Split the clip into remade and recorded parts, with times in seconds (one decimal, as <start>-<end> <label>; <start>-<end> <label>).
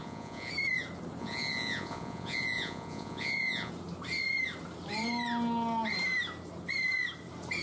0.0-0.5 remade; 0.5-1.2 recorded; 1.2-3.7 remade; 3.7-7.6 recorded